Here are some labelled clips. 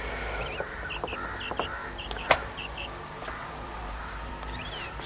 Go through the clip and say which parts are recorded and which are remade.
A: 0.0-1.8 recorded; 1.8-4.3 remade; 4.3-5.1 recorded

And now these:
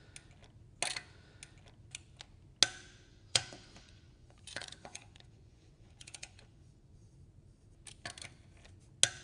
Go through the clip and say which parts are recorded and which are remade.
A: 0.0-3.1 recorded; 3.1-7.1 remade; 7.1-9.2 recorded

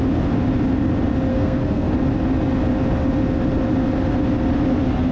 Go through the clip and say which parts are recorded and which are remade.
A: 0.0-1.3 recorded; 1.3-1.9 remade; 1.9-5.1 recorded

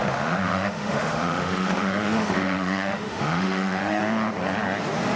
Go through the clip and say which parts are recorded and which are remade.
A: 0.0-4.0 remade; 4.0-5.2 recorded

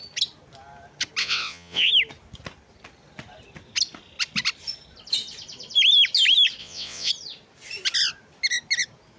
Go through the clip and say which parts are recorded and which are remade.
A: 0.0-1.2 recorded; 1.2-1.9 remade; 1.9-6.6 recorded; 6.6-7.1 remade; 7.1-9.2 recorded